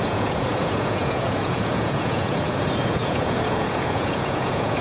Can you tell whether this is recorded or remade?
remade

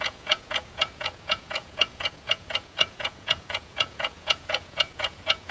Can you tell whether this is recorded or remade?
remade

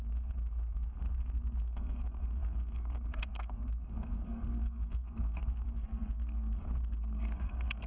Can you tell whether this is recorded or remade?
remade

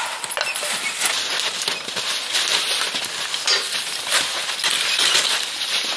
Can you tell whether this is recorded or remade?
recorded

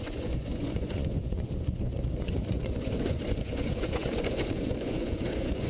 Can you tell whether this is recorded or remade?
remade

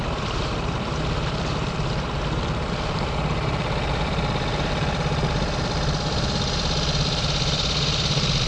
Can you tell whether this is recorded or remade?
remade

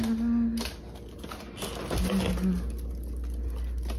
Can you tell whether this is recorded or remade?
recorded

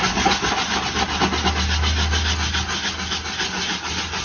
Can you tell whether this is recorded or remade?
recorded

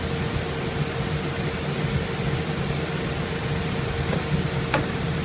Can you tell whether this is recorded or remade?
recorded